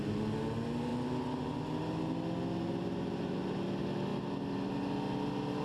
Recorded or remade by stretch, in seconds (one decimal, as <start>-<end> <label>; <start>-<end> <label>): 0.0-5.6 recorded